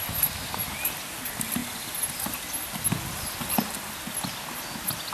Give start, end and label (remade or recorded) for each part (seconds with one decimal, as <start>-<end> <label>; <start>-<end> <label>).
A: 0.0-5.1 recorded